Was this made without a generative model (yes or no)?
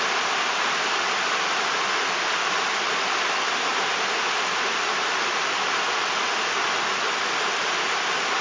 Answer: yes